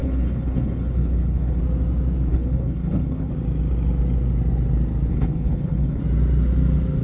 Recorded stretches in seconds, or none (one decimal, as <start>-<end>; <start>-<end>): 1.6-2.3; 3.3-5.1; 6.0-7.0